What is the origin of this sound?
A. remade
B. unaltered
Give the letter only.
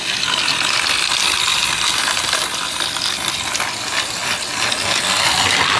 B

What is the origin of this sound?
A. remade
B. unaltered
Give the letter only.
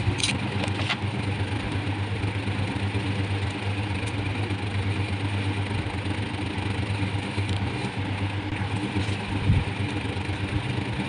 B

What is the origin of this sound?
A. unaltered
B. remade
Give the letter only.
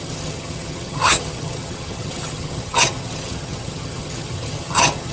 B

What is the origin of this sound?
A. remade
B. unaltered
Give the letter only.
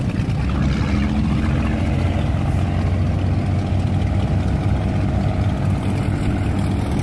B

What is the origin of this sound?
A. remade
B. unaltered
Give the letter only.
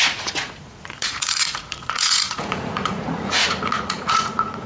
A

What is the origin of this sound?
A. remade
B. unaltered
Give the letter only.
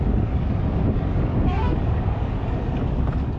A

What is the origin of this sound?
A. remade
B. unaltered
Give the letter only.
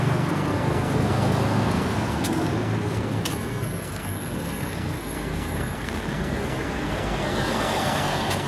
A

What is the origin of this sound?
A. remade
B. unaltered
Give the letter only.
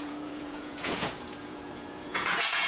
A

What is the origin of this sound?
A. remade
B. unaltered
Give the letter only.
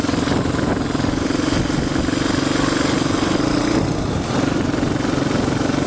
B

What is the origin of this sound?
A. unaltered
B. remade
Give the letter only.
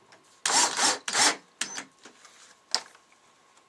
A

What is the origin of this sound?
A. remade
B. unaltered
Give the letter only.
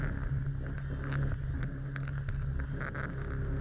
B